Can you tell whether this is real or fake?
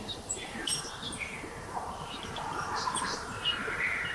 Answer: fake